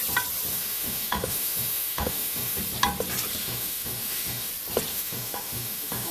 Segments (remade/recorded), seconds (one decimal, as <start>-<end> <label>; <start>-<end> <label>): 0.0-0.5 recorded; 0.5-2.6 remade; 2.6-3.4 recorded; 3.4-4.5 remade; 4.5-4.9 recorded; 4.9-6.1 remade